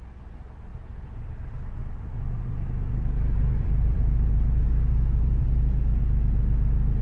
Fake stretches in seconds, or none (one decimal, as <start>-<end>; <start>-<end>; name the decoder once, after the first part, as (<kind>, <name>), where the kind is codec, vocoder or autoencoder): 0.7-1.3 (vocoder, BigVGAN v2); 1.8-6.0